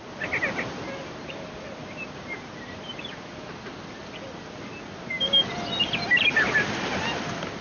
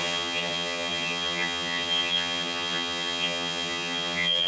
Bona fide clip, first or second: first